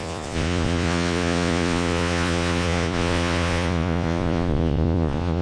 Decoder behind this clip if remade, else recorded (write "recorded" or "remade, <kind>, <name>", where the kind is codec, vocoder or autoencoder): remade, vocoder, Vocos